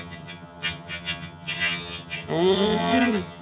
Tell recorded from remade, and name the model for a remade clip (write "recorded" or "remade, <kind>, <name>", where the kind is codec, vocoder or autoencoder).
remade, vocoder, HiFi-GAN